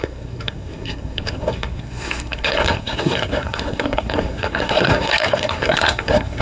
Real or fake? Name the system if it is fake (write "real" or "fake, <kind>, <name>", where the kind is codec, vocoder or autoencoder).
fake, codec, SNAC